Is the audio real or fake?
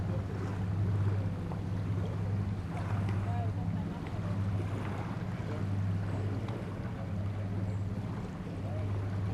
real